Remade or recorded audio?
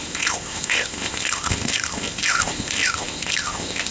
remade